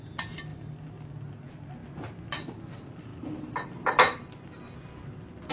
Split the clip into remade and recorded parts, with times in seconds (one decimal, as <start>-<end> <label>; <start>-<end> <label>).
0.0-5.5 recorded

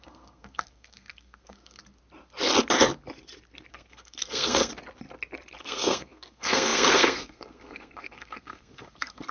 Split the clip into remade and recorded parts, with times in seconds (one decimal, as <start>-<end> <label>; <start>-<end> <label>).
0.0-1.8 remade; 1.8-3.7 recorded; 3.7-4.7 remade; 4.7-5.6 recorded; 5.6-9.3 remade